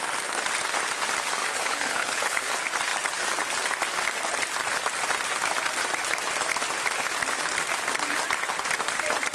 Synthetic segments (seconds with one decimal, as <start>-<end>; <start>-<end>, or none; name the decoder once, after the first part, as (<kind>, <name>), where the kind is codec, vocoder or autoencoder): 1.4-2.5 (codec, HILCodec)